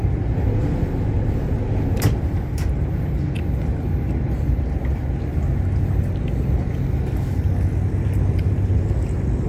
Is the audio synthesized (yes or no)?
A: no